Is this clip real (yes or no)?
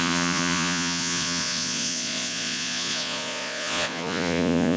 no